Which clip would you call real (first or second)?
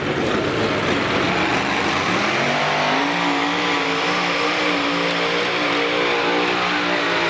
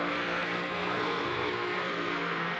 first